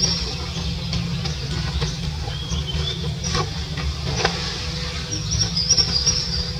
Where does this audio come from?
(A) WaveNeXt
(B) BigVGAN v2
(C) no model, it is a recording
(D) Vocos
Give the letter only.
C